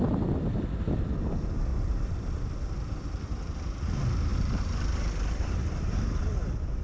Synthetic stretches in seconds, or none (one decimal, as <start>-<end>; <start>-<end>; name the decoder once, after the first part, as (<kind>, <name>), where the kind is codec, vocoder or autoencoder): 1.7-3.0 (vocoder, BigVGAN v2); 4.3-6.2